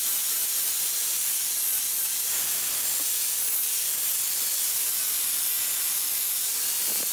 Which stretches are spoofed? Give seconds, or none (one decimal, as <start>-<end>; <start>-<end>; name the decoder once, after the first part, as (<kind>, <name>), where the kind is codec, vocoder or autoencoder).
none